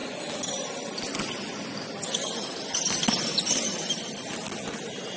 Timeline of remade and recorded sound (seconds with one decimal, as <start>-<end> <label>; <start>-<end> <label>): 0.0-5.2 recorded